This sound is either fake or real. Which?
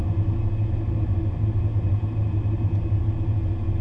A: real